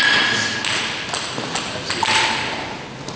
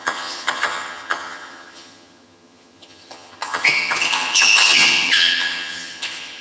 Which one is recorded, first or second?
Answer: first